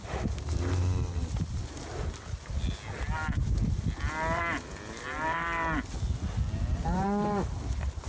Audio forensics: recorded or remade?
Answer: recorded